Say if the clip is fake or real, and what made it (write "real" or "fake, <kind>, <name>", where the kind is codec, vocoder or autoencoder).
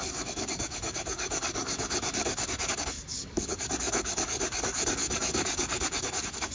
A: fake, codec, DAC